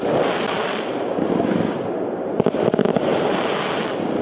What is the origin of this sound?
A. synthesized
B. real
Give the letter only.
B